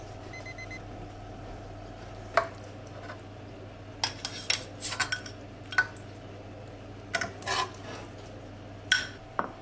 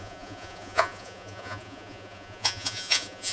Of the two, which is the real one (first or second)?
first